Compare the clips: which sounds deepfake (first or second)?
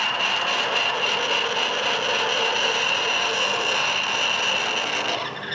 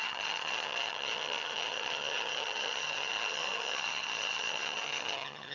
second